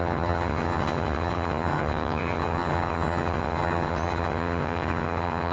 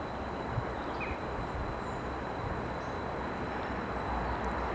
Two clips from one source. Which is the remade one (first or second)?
first